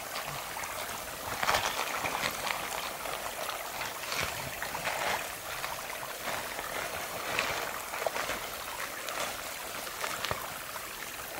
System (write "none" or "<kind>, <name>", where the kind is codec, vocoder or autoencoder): none